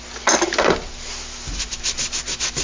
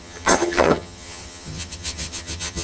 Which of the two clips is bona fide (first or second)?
first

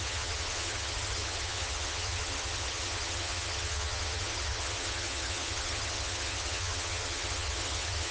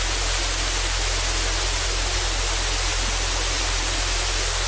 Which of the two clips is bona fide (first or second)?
second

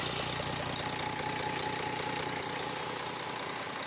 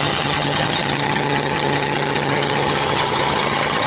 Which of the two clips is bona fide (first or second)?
first